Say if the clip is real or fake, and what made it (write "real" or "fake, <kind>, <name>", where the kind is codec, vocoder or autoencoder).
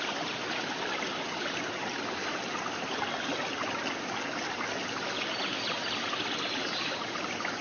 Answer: real